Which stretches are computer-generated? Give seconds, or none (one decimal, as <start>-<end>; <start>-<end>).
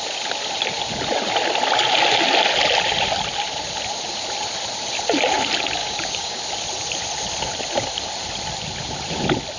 5.8-6.4